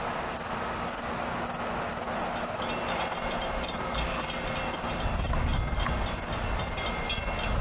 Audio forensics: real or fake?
real